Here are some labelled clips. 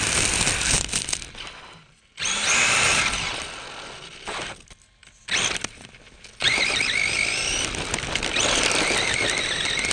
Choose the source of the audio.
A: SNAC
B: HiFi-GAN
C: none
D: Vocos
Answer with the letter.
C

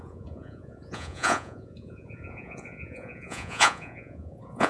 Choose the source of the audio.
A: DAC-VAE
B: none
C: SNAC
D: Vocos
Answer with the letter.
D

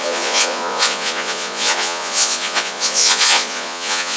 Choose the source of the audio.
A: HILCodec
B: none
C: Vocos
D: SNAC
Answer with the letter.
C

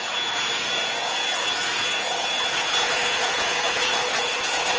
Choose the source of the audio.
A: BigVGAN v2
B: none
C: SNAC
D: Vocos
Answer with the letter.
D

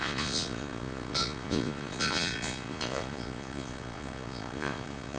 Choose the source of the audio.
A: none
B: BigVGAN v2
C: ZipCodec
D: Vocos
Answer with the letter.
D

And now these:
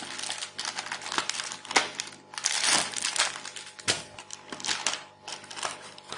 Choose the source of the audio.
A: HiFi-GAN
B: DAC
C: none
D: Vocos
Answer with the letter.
C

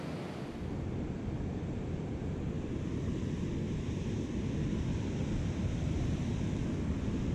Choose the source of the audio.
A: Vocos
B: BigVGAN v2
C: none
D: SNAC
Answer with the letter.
C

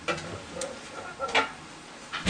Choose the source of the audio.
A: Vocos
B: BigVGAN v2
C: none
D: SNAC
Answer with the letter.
C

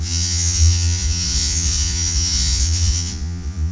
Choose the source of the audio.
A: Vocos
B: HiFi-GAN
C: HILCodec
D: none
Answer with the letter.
A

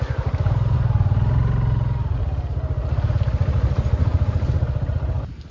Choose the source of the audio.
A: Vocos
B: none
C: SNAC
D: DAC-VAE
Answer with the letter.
B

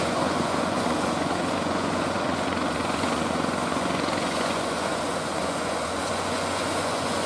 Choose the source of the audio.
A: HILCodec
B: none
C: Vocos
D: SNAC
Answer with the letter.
C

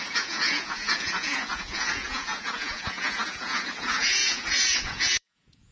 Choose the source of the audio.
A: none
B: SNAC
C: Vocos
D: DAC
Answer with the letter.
C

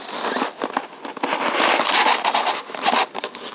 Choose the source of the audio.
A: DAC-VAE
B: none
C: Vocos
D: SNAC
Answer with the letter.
B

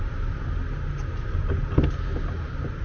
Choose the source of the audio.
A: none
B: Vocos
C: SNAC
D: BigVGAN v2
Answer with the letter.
A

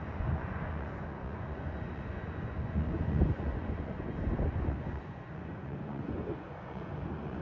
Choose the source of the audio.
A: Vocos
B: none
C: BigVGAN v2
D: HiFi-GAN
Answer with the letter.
A